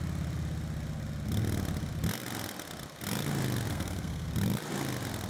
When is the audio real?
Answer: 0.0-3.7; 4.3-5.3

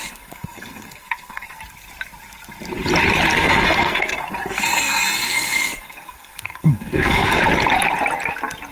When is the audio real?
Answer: 1.6-3.3; 7.4-8.7

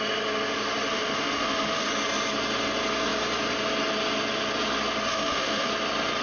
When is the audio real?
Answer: 0.0-0.9; 1.9-5.1; 5.7-6.2